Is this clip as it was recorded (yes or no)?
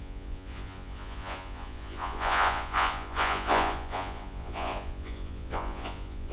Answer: no